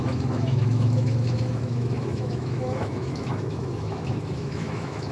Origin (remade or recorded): remade